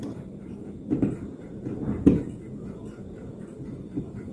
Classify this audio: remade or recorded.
remade